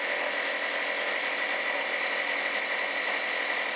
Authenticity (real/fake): real